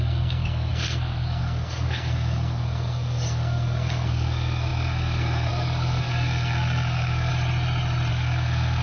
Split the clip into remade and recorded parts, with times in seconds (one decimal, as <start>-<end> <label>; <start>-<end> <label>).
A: 0.0-7.3 remade; 7.3-8.1 recorded; 8.1-8.8 remade